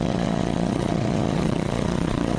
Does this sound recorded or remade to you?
remade